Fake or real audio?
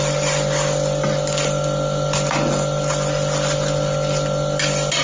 real